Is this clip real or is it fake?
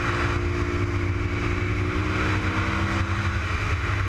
real